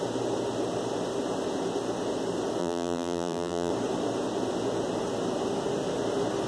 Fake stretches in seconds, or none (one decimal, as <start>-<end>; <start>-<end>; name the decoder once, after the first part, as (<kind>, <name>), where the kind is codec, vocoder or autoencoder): 2.6-3.7 (vocoder, BigVGAN v2)